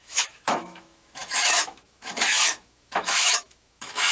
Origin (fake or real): fake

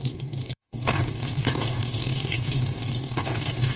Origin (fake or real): fake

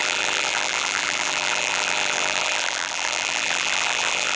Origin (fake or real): fake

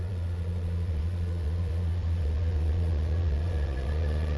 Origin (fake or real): fake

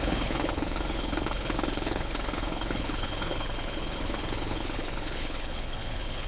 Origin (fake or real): fake